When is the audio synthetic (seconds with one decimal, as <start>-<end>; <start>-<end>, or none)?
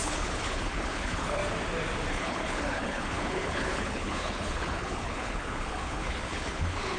0.0-1.4; 2.1-7.0